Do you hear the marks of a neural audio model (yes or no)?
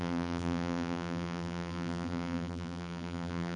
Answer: yes